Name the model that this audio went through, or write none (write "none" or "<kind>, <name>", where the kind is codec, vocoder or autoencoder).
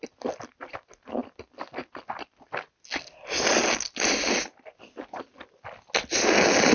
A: none